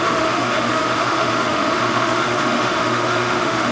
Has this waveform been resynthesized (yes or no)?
yes